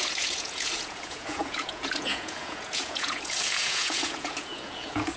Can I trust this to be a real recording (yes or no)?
no